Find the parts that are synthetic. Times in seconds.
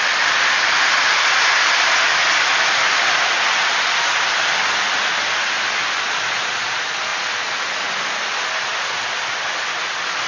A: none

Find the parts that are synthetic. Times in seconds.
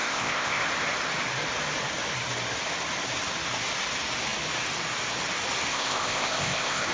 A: 0.0-0.6 (codec, ZipCodec); 5.7-6.9